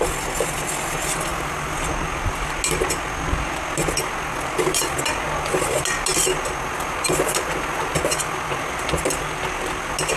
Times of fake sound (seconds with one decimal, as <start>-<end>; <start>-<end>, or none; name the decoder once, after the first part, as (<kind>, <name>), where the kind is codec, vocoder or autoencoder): none